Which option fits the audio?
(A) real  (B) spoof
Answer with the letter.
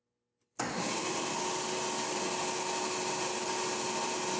A